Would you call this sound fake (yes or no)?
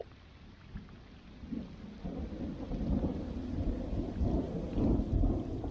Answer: no